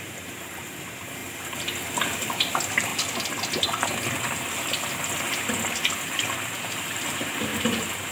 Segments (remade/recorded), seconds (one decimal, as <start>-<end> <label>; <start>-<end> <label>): 0.0-1.2 remade; 1.2-2.3 recorded; 2.3-2.9 remade; 2.9-6.6 recorded; 6.6-8.1 remade